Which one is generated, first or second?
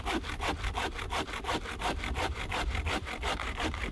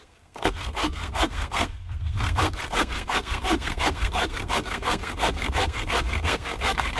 second